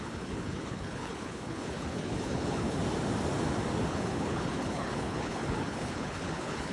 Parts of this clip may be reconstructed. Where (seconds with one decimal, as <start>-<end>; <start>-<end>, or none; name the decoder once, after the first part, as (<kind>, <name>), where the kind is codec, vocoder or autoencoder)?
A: 0.0-2.8 (codec, HILCodec); 3.9-6.7